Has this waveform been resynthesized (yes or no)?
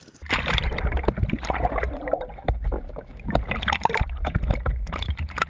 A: yes